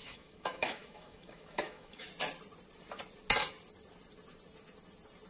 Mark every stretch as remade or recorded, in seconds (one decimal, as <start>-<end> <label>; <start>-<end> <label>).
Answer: 0.0-2.1 remade; 2.1-5.3 recorded